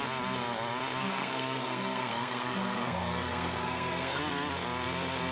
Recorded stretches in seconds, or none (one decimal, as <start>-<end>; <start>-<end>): 0.0-1.0; 4.2-5.3